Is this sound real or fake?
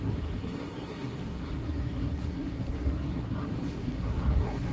fake